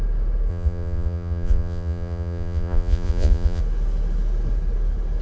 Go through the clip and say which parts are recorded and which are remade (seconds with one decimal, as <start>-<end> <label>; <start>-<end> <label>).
0.0-0.5 recorded; 0.5-3.6 remade; 3.6-5.2 recorded